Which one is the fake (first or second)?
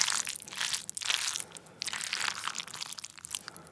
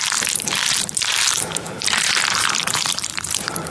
second